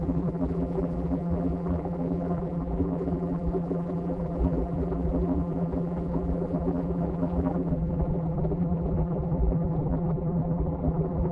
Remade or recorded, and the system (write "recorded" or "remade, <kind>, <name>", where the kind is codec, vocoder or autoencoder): remade, vocoder, BigVGAN v2